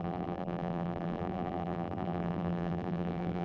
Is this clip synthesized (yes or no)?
yes